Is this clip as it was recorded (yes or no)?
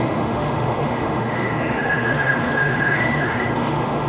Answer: no